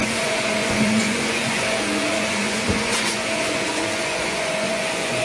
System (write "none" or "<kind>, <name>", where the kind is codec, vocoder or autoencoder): vocoder, Vocos